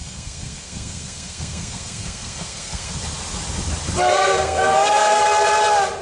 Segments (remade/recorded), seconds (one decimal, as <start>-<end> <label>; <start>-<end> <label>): 0.0-2.9 remade; 2.9-4.1 recorded; 4.1-5.2 remade; 5.2-6.0 recorded